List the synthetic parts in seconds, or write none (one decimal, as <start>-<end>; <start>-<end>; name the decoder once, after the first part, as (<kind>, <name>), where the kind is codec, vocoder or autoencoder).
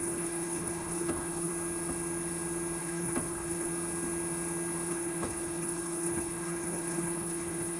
0.0-1.5 (codec, HILCodec); 2.8-3.7; 4.9-7.8